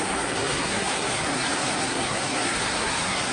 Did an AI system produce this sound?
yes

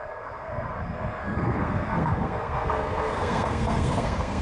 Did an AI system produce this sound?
yes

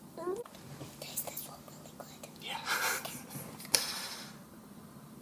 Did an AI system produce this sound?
no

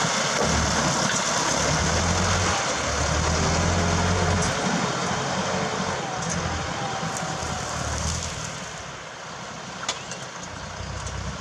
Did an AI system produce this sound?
no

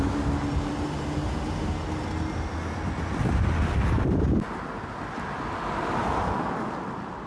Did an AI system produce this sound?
no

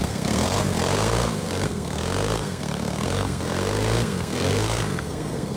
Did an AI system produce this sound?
yes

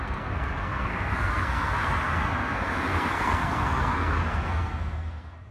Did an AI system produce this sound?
yes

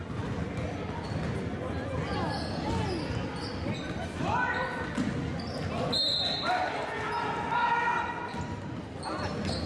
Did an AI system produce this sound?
no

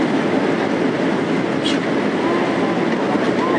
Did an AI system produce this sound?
no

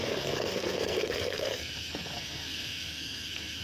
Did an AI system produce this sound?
yes